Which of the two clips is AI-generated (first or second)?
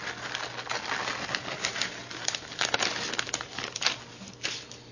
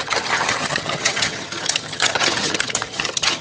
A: second